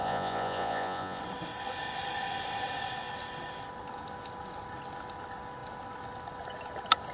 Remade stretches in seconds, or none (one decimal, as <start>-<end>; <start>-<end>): 0.0-1.2